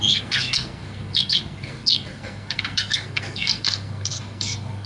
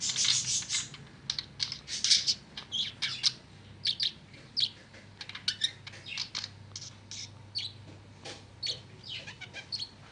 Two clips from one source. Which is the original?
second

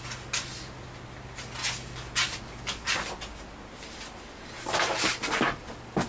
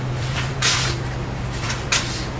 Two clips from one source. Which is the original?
first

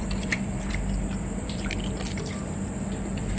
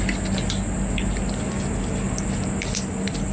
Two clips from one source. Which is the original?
second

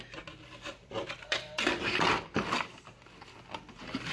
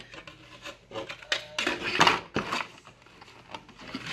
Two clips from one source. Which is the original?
second